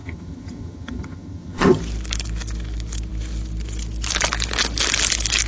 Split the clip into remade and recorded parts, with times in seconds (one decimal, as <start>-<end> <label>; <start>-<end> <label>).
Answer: 0.0-1.8 remade; 1.8-5.5 recorded